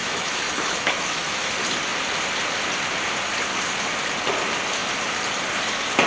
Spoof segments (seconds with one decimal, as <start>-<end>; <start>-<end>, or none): 0.0-1.5